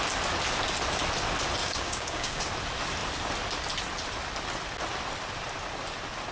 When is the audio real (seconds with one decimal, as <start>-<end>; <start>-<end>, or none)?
0.0-1.6; 2.4-6.3